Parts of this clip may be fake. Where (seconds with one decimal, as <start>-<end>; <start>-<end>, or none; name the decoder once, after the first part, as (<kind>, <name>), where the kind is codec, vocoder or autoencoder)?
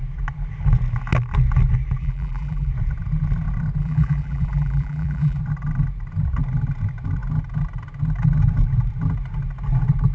2.0-2.7 (vocoder, BigVGAN v2); 3.8-5.4